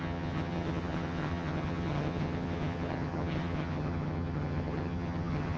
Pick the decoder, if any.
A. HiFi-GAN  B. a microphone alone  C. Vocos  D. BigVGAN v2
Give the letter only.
A